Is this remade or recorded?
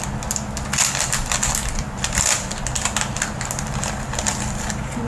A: recorded